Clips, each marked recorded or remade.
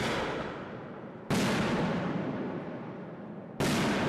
recorded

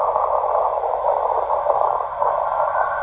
recorded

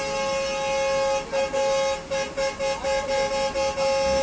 recorded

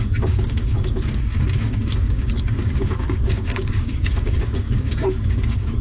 remade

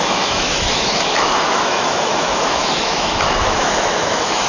remade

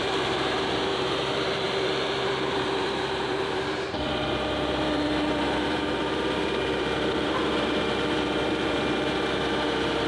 remade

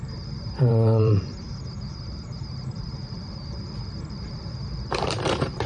remade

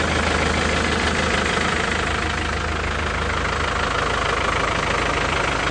recorded